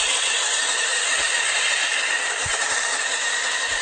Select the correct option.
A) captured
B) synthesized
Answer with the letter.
A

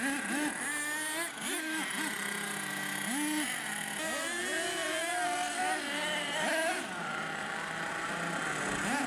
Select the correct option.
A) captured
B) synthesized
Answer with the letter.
A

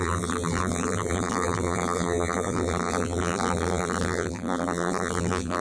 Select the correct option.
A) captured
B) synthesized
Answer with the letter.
B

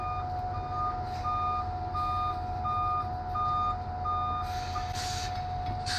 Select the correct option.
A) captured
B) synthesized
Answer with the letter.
A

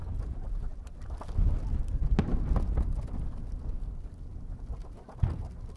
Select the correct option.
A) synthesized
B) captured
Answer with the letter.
B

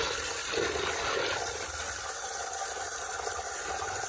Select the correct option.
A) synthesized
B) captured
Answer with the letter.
A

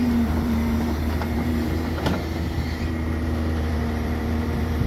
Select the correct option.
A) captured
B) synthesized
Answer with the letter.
B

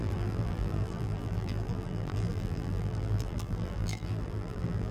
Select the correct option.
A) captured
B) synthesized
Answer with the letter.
B